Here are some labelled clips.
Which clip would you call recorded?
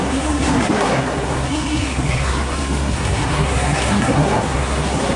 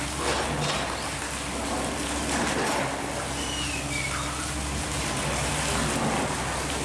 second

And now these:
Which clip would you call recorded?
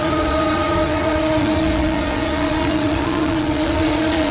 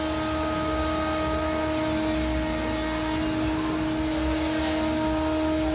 second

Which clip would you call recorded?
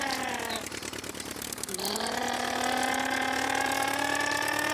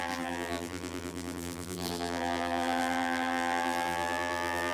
first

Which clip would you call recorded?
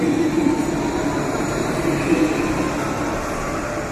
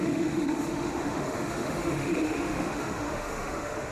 first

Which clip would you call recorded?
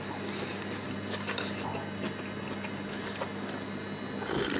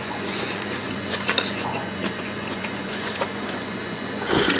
first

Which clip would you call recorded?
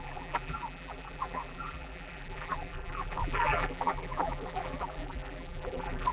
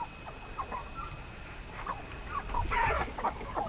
second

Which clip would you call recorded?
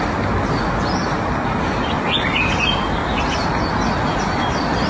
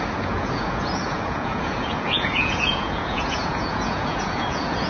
first